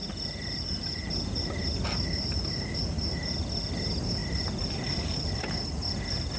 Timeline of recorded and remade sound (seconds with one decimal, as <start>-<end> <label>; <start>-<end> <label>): 0.0-6.4 recorded